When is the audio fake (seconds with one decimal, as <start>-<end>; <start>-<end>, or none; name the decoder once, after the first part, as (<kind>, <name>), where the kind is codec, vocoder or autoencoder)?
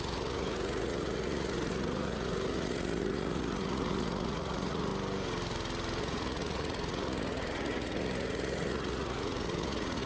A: 0.0-4.9 (vocoder, Vocos); 6.0-10.1